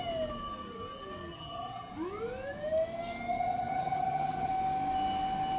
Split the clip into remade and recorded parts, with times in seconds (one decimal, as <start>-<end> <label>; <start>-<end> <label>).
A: 0.0-1.3 recorded; 1.3-1.9 remade; 1.9-3.3 recorded; 3.3-4.5 remade; 4.5-5.6 recorded